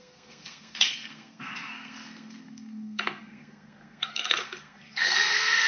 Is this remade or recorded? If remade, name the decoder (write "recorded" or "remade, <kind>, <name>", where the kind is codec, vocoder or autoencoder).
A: remade, codec, SNAC